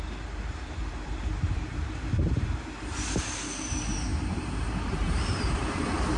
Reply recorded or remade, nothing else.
remade